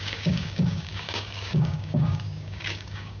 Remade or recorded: remade